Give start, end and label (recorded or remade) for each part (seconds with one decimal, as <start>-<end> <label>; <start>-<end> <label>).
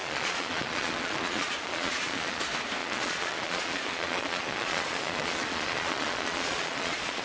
0.0-2.4 remade; 2.4-2.8 recorded; 2.8-7.2 remade